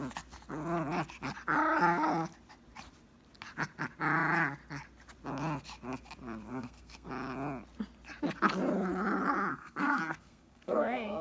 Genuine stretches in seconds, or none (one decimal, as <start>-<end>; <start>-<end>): 0.0-6.5; 7.1-9.5

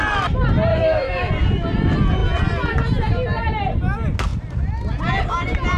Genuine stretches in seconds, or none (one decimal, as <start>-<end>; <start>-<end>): 0.0-0.7; 1.3-5.8